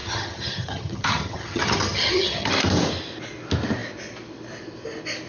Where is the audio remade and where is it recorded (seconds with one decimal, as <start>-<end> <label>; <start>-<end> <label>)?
0.0-2.5 remade; 2.5-5.3 recorded